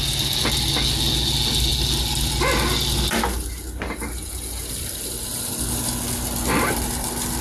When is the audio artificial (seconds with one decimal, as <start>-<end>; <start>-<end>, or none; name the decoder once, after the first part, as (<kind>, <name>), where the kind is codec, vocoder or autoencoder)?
none